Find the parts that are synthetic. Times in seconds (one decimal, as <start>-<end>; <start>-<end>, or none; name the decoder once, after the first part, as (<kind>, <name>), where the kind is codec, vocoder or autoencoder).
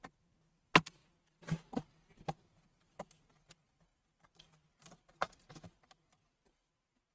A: none